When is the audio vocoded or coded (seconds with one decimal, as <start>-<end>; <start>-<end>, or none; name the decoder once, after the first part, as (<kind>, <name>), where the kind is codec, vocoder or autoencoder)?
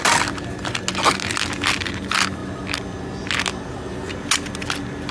none